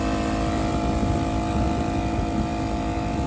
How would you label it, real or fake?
real